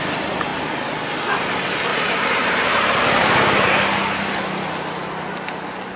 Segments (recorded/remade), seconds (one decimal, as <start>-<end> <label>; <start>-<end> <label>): 0.0-1.9 recorded; 1.9-3.7 remade; 3.7-6.0 recorded